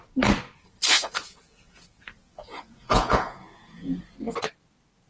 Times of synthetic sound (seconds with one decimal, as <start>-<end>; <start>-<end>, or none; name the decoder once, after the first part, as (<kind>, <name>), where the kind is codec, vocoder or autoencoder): 0.9-4.0 (vocoder, Vocos)